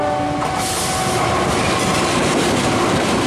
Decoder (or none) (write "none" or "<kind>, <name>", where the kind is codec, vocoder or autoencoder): none